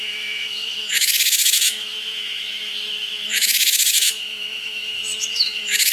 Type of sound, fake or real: fake